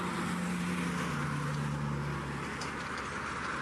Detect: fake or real real